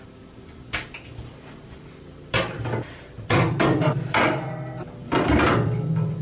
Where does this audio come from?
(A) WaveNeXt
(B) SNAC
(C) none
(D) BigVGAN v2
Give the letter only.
D